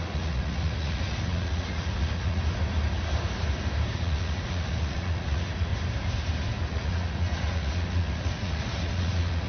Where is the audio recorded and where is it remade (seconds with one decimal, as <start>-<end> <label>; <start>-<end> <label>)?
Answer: 0.0-2.4 remade; 2.4-3.9 recorded; 3.9-5.7 remade; 5.7-6.7 recorded; 6.7-9.5 remade